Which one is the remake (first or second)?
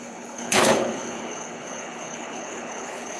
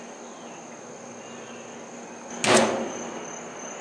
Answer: first